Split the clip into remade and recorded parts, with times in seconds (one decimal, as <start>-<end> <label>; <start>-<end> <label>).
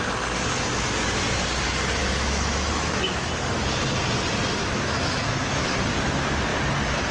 0.0-2.0 recorded; 2.0-3.3 remade; 3.3-4.6 recorded; 4.6-5.8 remade; 5.8-7.1 recorded